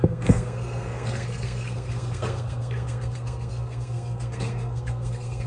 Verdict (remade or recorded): remade